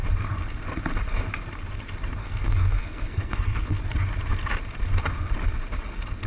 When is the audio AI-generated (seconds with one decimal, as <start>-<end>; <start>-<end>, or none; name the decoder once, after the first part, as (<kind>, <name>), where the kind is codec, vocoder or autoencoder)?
2.2-3.8 (codec, SNAC)